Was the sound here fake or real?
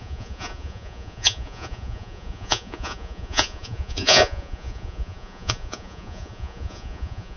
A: fake